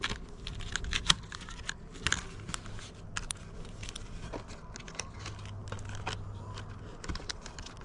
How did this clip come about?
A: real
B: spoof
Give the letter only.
A